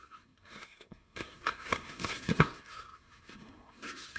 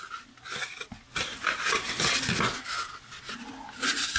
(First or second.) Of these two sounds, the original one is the second